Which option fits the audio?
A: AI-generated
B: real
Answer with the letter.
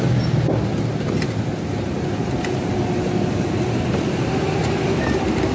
B